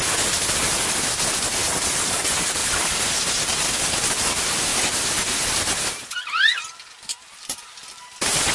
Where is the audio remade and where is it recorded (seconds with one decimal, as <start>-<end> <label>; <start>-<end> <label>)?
0.0-8.5 recorded